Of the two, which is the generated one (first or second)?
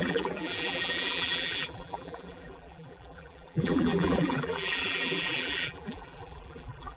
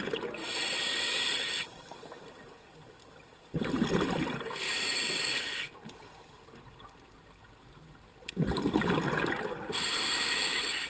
first